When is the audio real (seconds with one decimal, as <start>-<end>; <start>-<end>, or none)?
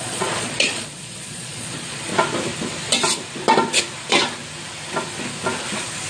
2.1-6.1